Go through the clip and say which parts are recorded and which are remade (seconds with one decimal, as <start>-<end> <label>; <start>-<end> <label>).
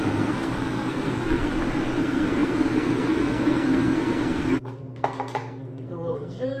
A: 0.0-1.5 remade; 1.5-2.0 recorded; 2.0-6.6 remade